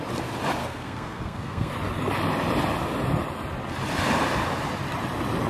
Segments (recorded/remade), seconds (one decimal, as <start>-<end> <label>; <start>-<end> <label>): 0.0-0.6 recorded; 0.6-1.7 remade; 1.7-5.5 recorded